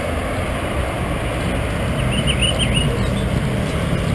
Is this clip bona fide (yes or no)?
yes